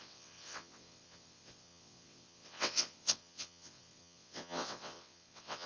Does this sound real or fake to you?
fake